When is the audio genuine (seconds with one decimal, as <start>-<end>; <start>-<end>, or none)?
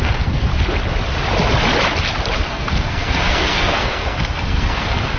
0.5-2.5